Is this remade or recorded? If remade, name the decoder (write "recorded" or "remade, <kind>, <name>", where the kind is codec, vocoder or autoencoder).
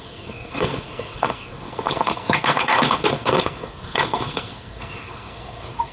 remade, codec, SNAC